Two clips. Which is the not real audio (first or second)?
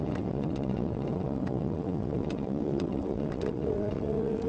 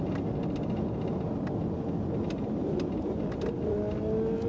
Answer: first